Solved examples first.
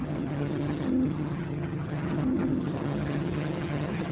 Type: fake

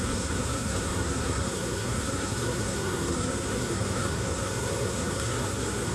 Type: fake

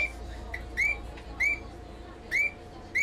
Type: real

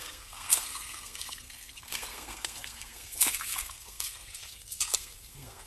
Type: fake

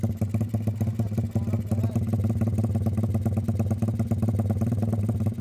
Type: real